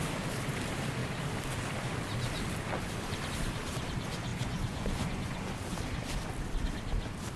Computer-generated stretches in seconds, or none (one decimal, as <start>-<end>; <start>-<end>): 4.3-5.4